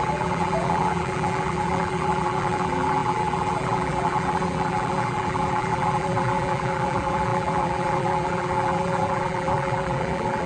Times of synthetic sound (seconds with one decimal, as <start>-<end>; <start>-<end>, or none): 0.0-10.5